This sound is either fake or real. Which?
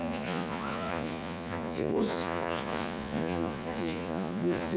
fake